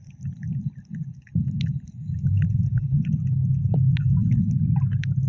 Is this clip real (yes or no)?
yes